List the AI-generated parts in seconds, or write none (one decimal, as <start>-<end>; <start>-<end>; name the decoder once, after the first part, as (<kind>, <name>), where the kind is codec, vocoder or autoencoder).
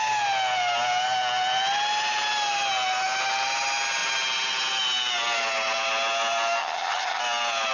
6.6-7.2 (vocoder, HiFi-GAN)